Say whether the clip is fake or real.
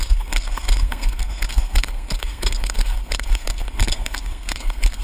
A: fake